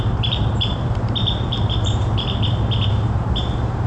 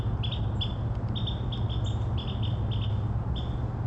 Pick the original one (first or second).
second